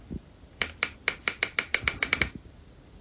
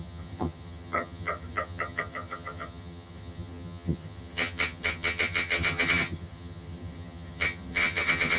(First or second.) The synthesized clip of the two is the second